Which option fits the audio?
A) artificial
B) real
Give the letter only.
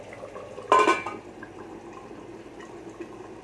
B